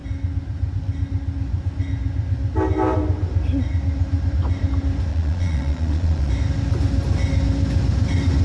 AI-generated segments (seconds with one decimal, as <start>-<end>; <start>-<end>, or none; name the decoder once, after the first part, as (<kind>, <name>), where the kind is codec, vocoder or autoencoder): 5.1-6.3 (vocoder, Vocos)